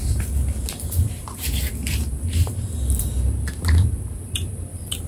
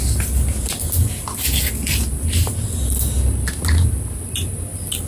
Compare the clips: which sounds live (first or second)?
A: second